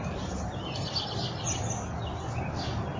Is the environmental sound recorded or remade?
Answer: recorded